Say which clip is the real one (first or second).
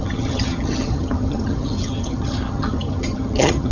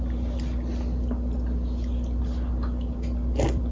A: second